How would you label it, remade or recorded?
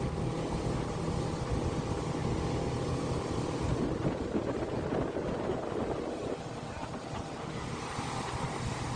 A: recorded